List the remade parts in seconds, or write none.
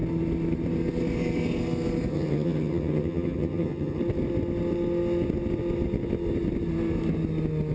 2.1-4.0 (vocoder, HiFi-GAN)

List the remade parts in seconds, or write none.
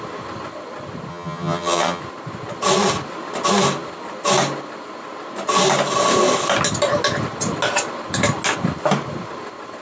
1.1-2.0 (vocoder, HiFi-GAN)